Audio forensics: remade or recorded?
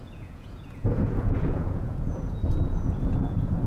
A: remade